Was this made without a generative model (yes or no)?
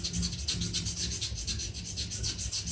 yes